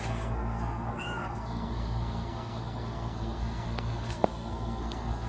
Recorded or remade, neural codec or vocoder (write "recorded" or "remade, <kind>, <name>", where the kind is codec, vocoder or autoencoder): remade, codec, SNAC